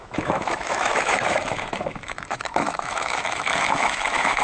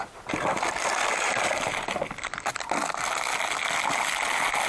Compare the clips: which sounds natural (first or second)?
second